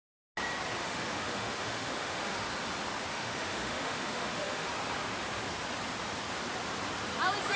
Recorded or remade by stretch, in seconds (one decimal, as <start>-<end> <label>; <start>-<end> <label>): 0.0-0.8 recorded; 0.8-2.5 remade; 2.5-3.1 recorded; 3.1-4.7 remade; 4.7-7.6 recorded